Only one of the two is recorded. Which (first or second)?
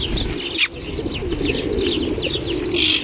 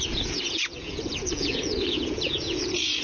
first